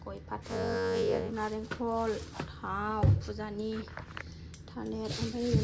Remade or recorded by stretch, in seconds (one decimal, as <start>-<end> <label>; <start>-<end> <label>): 0.0-0.5 recorded; 0.5-1.3 remade; 1.3-5.6 recorded